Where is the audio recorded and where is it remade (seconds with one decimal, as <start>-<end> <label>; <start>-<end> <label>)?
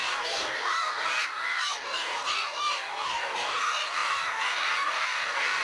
0.0-5.6 remade